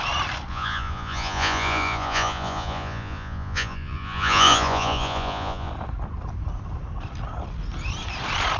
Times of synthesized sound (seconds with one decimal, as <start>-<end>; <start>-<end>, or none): 0.5-5.7